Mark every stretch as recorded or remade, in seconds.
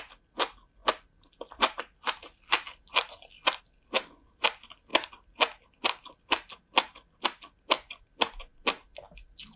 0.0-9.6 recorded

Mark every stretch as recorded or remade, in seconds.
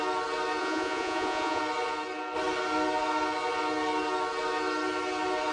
0.0-0.6 recorded; 0.6-1.6 remade; 1.6-5.5 recorded